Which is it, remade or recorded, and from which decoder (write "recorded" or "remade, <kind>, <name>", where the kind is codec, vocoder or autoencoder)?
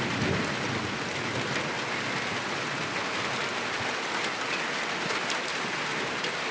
recorded